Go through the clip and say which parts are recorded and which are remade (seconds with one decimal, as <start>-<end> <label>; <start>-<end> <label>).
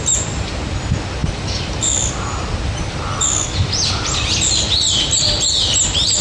0.0-6.2 recorded